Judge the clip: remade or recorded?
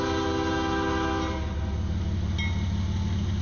recorded